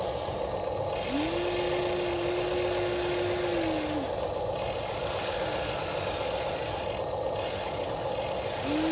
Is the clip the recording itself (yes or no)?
yes